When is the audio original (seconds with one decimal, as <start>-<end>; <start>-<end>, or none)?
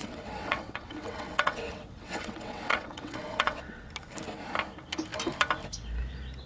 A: 3.9-6.5